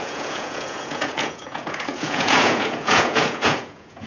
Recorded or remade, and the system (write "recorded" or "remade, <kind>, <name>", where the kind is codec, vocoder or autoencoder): remade, vocoder, Vocos